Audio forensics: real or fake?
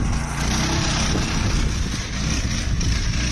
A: real